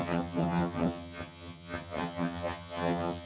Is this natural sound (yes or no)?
no